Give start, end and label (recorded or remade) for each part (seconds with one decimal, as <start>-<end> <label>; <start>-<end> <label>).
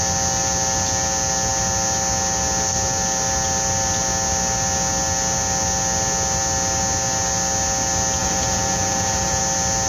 0.0-8.2 recorded; 8.2-9.4 remade; 9.4-9.9 recorded